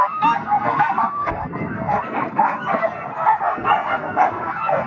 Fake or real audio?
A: fake